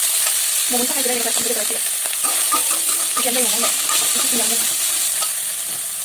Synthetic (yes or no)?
no